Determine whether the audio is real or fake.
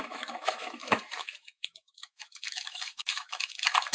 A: fake